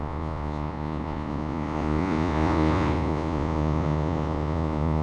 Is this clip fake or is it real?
fake